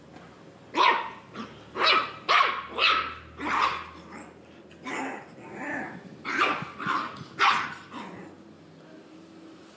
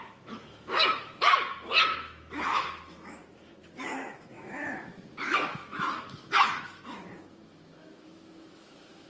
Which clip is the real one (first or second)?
first